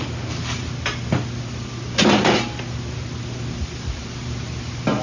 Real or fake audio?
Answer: real